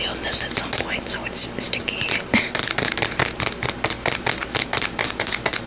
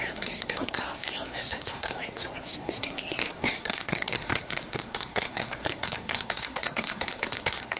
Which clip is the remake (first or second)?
second